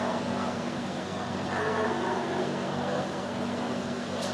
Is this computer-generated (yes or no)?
yes